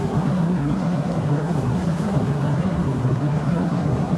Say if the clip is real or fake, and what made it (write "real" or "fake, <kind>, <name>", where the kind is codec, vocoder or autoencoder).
fake, codec, SNAC